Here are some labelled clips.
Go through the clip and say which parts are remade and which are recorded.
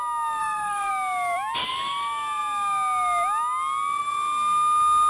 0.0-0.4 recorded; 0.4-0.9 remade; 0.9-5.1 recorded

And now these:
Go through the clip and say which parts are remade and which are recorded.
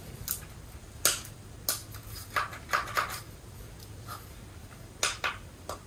0.0-5.9 recorded